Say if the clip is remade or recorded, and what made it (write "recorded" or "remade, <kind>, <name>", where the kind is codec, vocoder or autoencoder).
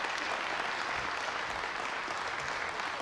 recorded